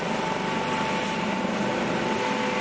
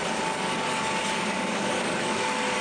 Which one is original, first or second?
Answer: first